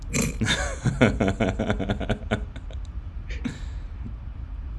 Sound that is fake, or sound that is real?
real